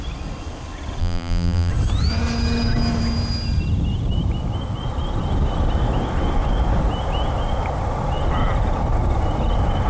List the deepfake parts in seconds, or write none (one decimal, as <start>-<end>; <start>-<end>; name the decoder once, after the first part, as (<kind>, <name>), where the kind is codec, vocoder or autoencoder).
1.0-1.7 (vocoder, BigVGAN v2)